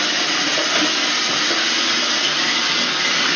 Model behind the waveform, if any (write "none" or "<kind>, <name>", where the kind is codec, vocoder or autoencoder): none